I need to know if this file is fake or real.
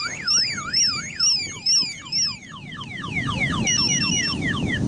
real